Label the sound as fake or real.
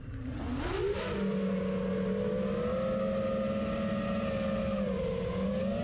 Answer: real